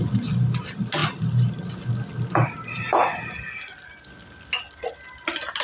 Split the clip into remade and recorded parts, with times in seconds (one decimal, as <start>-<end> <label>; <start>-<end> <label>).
0.0-5.6 recorded